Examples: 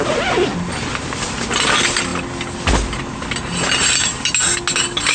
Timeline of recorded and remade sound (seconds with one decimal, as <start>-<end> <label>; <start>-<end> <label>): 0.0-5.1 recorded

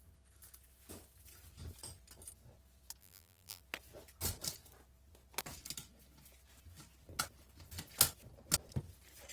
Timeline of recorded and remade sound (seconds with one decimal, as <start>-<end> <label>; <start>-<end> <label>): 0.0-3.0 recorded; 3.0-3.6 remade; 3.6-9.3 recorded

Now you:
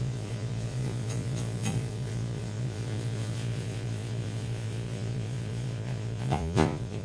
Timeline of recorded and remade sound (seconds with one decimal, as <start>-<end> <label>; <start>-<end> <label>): 0.0-7.0 remade

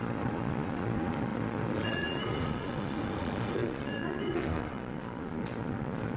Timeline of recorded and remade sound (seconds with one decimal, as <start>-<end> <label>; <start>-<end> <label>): 0.0-6.2 remade

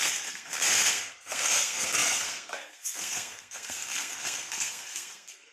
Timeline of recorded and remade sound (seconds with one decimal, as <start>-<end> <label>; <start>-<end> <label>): 0.0-5.5 remade

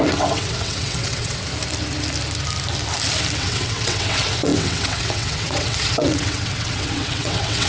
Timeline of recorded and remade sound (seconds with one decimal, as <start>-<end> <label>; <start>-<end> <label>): 0.0-1.5 remade; 1.5-3.4 recorded; 3.4-7.7 remade

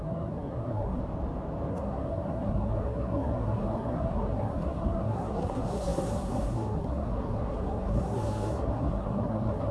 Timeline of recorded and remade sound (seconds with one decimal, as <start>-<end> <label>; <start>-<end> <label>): 0.0-1.0 remade; 1.0-1.7 recorded; 1.7-9.7 remade